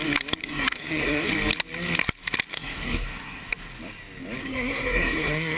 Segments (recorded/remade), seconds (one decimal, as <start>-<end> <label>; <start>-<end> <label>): 0.0-0.4 recorded; 0.4-1.3 remade; 1.3-2.5 recorded; 2.5-3.4 remade; 3.4-4.4 recorded; 4.4-5.6 remade